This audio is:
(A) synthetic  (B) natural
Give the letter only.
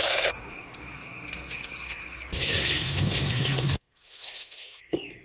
A